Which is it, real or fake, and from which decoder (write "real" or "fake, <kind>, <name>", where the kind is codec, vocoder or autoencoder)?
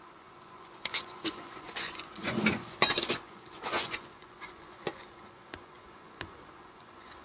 fake, vocoder, Vocos